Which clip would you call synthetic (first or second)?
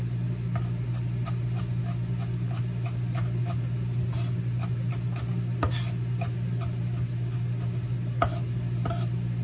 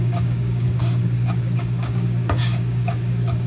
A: second